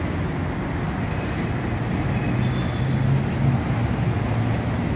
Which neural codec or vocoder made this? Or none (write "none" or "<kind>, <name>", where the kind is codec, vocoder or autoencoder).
none